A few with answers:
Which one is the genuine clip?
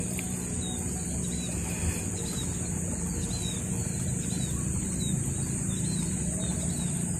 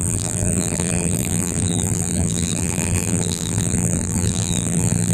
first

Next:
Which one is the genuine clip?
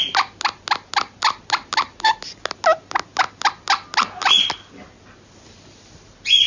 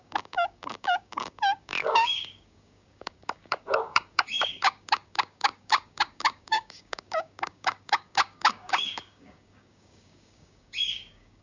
first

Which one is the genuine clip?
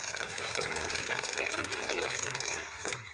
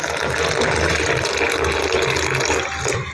second